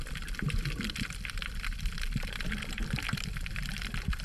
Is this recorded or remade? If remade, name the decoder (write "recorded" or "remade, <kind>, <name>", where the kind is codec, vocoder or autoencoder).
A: remade, vocoder, BigVGAN v2